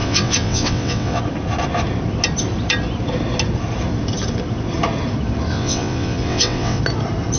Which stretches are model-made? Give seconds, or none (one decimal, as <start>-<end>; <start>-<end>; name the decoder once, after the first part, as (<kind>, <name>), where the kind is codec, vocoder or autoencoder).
0.0-1.2 (vocoder, WaveNeXt); 5.5-6.8